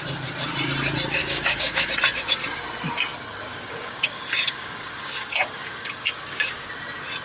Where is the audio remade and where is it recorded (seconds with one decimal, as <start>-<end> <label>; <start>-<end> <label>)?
0.0-1.2 recorded; 1.2-1.9 remade; 1.9-3.5 recorded; 3.5-6.7 remade; 6.7-7.2 recorded